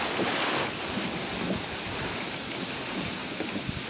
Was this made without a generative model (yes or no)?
yes